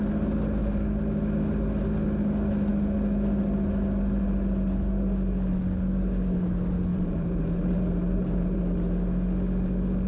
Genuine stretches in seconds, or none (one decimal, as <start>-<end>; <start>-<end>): 0.0-6.9; 8.6-10.1